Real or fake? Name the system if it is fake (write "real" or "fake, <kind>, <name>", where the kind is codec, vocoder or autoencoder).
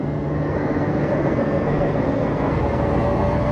fake, codec, SNAC